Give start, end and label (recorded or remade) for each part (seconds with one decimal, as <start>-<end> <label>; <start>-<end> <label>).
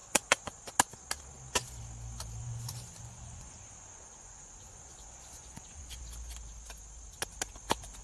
0.0-0.7 remade; 0.7-2.4 recorded; 2.4-6.0 remade; 6.0-8.0 recorded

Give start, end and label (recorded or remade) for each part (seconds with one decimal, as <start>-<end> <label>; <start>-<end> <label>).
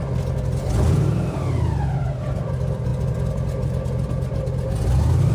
0.0-5.3 recorded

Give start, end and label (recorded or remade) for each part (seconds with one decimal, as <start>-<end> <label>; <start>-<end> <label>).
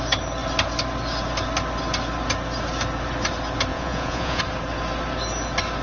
0.0-3.7 recorded; 3.7-4.4 remade; 4.4-5.8 recorded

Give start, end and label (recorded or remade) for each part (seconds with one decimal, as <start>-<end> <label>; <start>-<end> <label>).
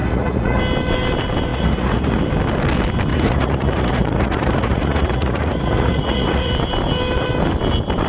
0.0-0.6 remade; 0.6-1.5 recorded; 1.5-2.2 remade; 2.2-3.1 recorded; 3.1-6.5 remade; 6.5-8.1 recorded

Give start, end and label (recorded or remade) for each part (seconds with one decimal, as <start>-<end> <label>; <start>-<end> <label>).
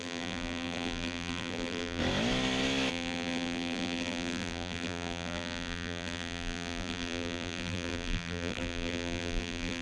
0.0-2.0 remade; 2.0-2.9 recorded; 2.9-9.8 remade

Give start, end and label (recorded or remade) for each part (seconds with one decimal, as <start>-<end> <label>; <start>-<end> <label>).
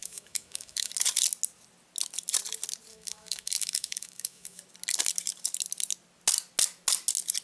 0.0-0.9 remade; 0.9-2.9 recorded; 2.9-4.6 remade; 4.6-7.4 recorded